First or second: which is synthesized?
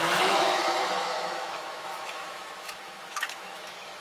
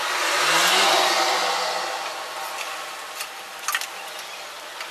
first